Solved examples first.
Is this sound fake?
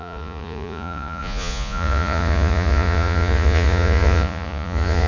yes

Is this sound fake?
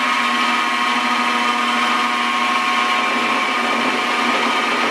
no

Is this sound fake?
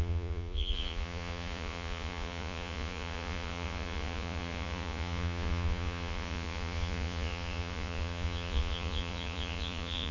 yes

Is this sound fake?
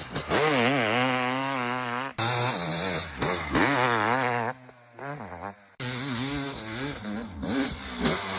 no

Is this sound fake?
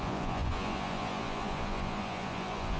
yes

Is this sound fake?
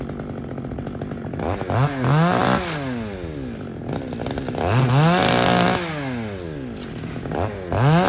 no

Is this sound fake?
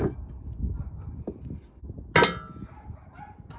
no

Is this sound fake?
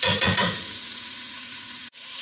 yes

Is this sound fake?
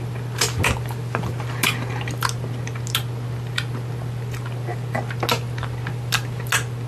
no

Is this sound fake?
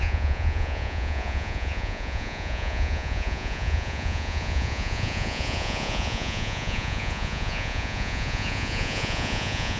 yes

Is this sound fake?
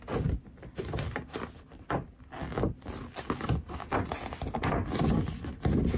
no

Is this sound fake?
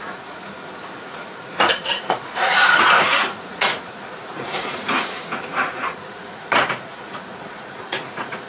yes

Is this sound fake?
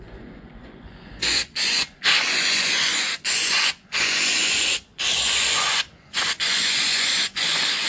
yes